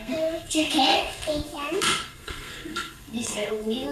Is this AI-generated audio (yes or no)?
yes